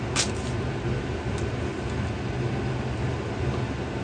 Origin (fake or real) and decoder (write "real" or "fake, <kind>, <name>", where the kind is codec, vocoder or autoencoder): real